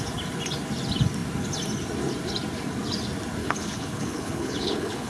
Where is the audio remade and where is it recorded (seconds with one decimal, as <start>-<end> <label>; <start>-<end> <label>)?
0.0-3.4 recorded; 3.4-5.1 remade